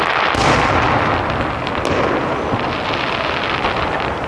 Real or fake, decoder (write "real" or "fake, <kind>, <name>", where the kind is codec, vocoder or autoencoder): real